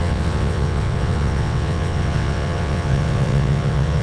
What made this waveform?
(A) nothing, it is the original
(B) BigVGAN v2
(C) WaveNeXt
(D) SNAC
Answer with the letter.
C